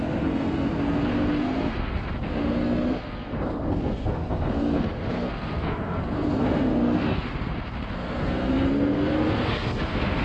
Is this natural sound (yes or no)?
no